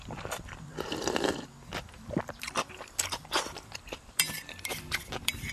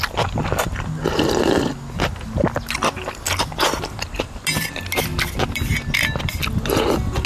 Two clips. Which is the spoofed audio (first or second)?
first